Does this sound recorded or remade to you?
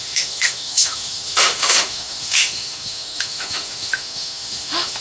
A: remade